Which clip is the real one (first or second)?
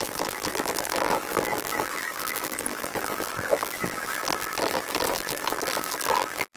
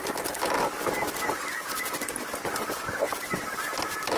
second